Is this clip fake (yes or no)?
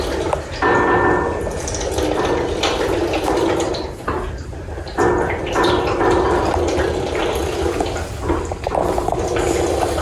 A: no